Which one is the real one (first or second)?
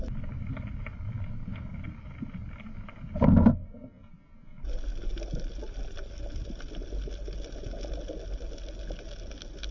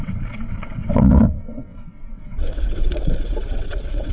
first